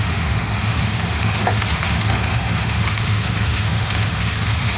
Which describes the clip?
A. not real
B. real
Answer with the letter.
A